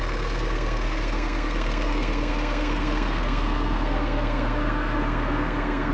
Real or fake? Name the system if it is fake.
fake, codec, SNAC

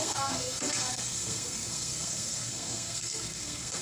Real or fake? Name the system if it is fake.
fake, codec, SNAC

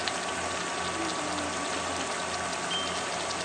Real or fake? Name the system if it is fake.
real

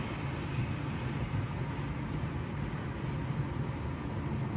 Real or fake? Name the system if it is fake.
real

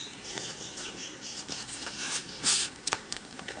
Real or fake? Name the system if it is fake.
fake, codec, SNAC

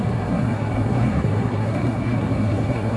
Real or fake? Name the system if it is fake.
fake, codec, SNAC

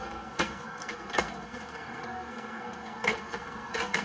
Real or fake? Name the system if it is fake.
fake, codec, SNAC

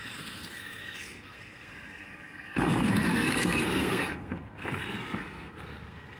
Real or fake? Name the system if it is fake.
fake, codec, SNAC